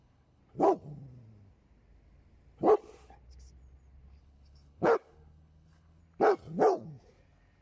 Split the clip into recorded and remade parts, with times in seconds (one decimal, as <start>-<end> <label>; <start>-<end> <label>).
0.0-0.4 remade; 0.4-4.2 recorded; 4.2-6.0 remade; 6.0-7.6 recorded